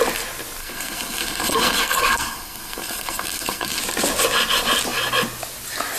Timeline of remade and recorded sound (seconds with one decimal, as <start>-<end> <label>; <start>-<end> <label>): 0.0-0.6 recorded; 0.6-3.8 remade; 3.8-6.0 recorded